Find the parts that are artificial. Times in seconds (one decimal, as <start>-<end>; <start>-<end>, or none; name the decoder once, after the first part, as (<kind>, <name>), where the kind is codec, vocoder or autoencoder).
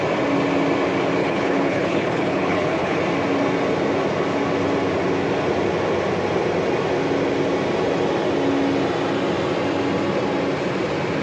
1.2-3.0 (codec, HILCodec)